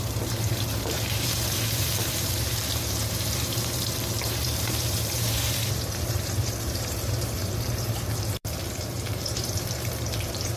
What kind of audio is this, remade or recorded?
remade